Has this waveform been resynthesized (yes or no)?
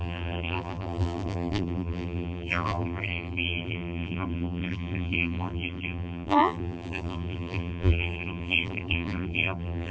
yes